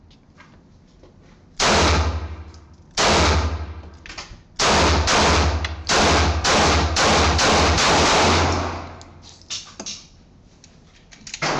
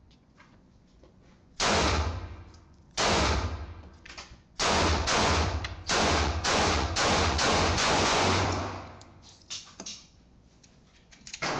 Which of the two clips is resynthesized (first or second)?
second